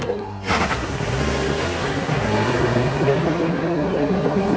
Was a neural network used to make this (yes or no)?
yes